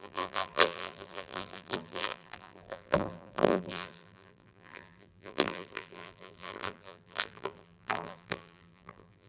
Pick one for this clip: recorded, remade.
remade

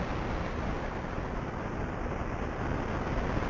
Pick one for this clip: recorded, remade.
recorded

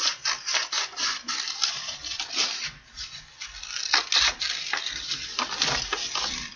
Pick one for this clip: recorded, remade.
recorded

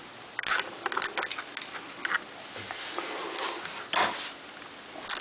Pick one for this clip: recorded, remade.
recorded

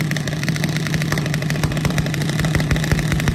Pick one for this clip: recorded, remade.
recorded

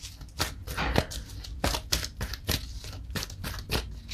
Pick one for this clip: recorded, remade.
recorded